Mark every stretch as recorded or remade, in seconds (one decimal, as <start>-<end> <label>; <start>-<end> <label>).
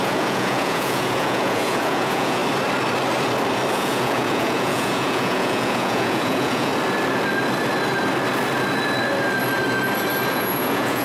0.0-2.4 remade; 2.4-3.7 recorded; 3.7-6.7 remade; 6.7-10.3 recorded; 10.3-11.0 remade